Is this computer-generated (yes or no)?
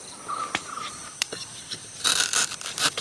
yes